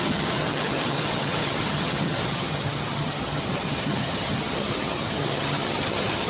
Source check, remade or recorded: remade